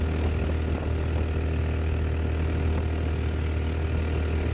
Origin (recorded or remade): recorded